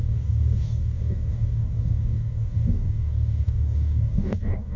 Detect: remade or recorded remade